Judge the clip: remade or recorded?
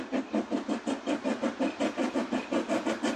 recorded